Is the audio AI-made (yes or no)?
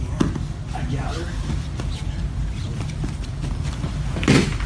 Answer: no